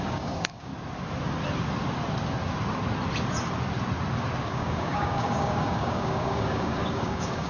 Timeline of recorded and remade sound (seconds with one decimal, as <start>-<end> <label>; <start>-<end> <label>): 0.0-0.7 remade; 0.7-4.4 recorded; 4.4-7.5 remade